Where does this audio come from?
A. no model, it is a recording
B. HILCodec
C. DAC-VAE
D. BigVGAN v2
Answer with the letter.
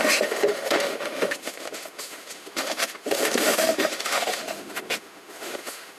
C